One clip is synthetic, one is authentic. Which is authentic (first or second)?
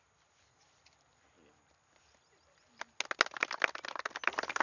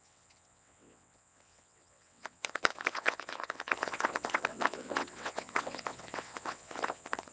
first